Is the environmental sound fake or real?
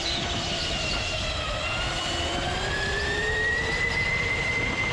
fake